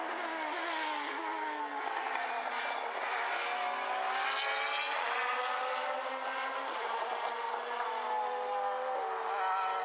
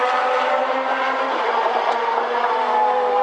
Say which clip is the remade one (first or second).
second